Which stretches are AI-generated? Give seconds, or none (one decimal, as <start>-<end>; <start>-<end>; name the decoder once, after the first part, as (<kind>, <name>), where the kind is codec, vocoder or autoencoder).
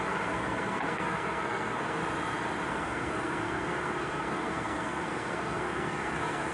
0.0-2.0 (codec, SNAC); 2.7-6.5